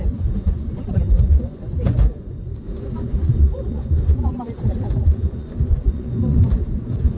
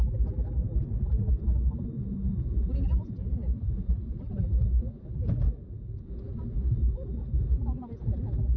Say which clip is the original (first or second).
second